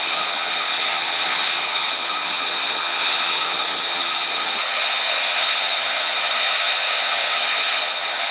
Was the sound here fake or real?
fake